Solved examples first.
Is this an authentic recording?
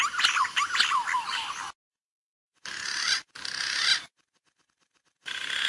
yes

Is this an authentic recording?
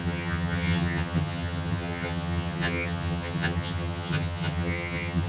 no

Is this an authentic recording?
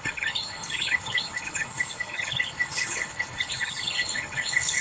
no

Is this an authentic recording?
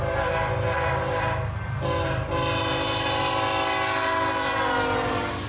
yes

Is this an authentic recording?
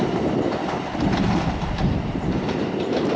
no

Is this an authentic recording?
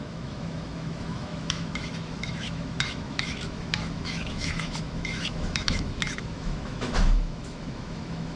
no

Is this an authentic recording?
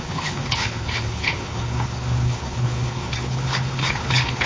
no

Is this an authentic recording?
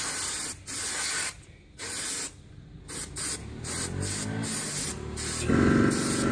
yes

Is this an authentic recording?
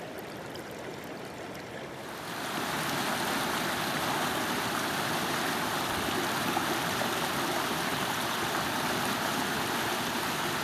yes